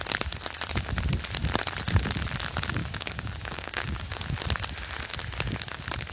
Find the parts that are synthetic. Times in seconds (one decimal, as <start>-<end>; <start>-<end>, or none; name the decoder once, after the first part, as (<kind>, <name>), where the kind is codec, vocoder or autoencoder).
2.8-4.2 (codec, DAC)